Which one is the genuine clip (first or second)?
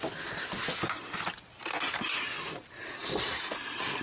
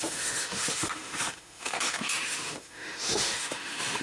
first